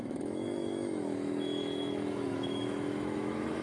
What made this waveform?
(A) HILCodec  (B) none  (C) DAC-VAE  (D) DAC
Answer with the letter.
C